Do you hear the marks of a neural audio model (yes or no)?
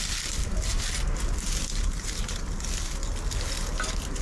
no